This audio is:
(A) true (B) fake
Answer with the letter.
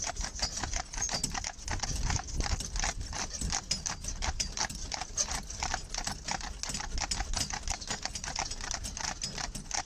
A